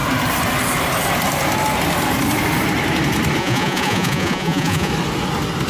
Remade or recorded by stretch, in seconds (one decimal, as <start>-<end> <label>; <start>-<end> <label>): 0.0-3.4 recorded; 3.4-4.9 remade; 4.9-5.7 recorded